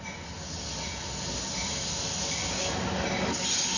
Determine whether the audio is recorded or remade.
recorded